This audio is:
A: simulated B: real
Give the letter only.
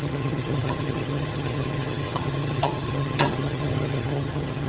A